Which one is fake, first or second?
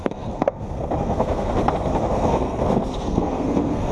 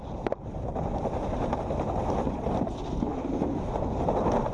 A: first